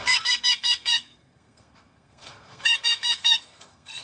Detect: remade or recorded remade